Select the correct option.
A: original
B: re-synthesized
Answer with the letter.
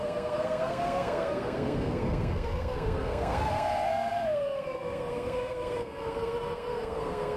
B